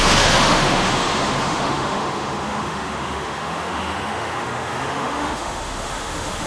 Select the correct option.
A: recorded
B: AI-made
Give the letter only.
B